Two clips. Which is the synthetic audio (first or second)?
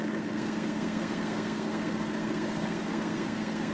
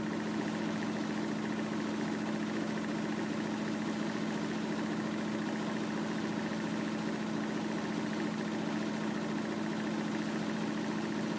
first